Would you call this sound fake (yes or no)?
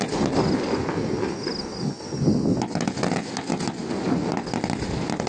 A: no